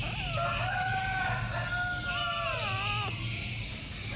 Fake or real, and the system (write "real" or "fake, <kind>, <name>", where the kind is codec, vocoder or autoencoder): real